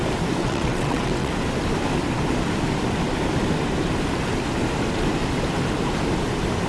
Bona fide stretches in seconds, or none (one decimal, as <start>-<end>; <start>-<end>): 0.0-0.4; 1.3-6.7